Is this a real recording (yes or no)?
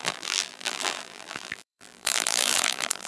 no